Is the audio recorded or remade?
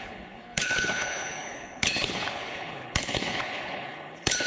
remade